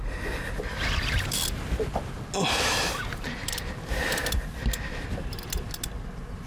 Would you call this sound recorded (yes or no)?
yes